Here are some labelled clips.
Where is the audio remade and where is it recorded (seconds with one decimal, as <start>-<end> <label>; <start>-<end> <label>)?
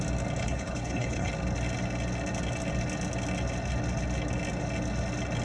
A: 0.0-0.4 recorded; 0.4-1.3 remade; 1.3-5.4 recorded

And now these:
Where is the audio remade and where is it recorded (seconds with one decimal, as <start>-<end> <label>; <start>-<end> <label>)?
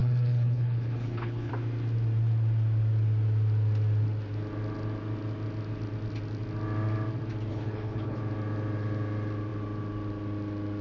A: 0.0-1.5 remade; 1.5-7.5 recorded; 7.5-8.2 remade; 8.2-10.8 recorded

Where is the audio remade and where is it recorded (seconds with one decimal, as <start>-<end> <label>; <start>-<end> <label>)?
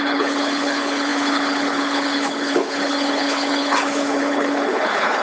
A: 0.0-5.2 remade